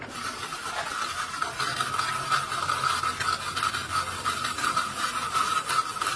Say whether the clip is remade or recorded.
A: recorded